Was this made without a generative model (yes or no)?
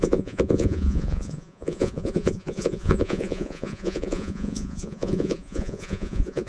no